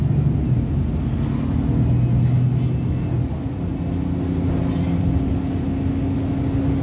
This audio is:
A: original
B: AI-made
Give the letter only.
A